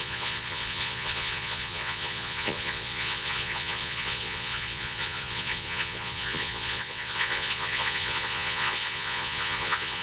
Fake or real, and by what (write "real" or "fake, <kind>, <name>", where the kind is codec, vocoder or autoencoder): fake, vocoder, Vocos